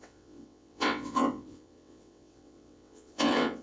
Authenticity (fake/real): fake